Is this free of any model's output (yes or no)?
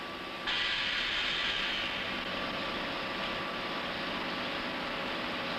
yes